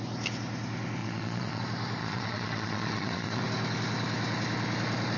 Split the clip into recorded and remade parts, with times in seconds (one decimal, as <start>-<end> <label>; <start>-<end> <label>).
0.0-1.0 recorded; 1.0-1.6 remade; 1.6-2.0 recorded; 2.0-3.4 remade; 3.4-5.2 recorded